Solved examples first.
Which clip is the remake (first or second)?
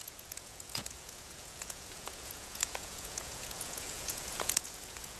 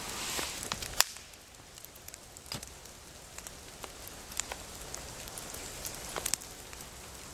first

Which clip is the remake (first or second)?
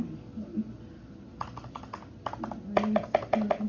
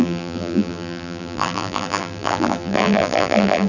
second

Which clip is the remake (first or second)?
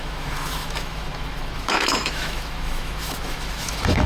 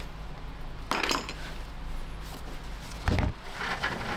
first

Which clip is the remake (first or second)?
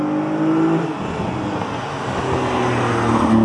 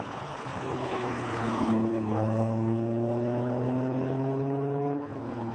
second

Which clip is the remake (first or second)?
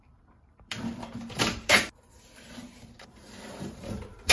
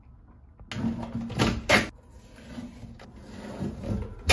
first